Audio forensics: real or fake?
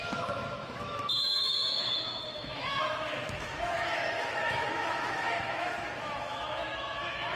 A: fake